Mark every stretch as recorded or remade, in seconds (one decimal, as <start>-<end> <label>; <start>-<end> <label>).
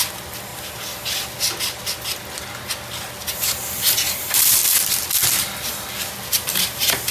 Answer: 0.0-0.5 remade; 0.5-4.1 recorded; 4.1-4.6 remade; 4.6-6.3 recorded; 6.3-7.1 remade